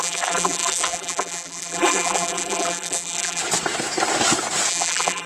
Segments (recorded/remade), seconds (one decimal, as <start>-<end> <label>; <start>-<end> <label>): 0.0-3.4 remade; 3.4-4.7 recorded; 4.7-5.3 remade

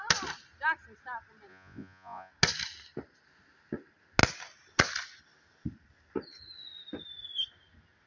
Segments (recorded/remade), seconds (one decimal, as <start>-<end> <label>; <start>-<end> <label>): 0.0-1.5 recorded; 1.5-2.3 remade; 2.3-8.1 recorded

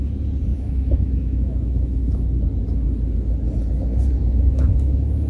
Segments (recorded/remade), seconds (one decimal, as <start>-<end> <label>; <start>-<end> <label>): 0.0-0.5 recorded; 0.5-2.1 remade; 2.1-4.2 recorded; 4.2-5.3 remade

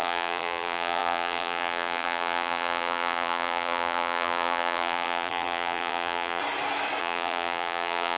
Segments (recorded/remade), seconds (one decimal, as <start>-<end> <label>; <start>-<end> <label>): 0.0-6.4 remade; 6.4-7.0 recorded; 7.0-8.2 remade

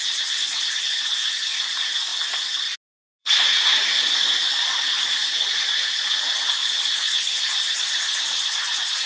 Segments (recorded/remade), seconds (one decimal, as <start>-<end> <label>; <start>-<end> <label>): 0.0-2.1 remade; 2.1-3.2 recorded; 3.2-4.4 remade; 4.4-5.1 recorded; 5.1-9.1 remade

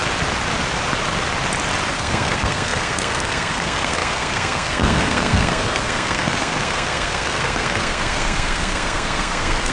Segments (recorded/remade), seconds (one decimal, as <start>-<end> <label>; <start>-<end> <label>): 0.0-1.9 recorded; 1.9-9.7 remade